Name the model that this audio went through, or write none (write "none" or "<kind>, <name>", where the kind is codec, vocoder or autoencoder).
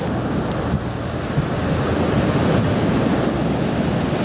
none